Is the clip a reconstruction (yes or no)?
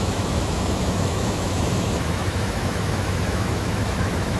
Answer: yes